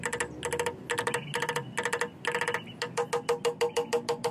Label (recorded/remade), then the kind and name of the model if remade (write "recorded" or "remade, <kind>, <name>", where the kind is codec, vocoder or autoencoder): recorded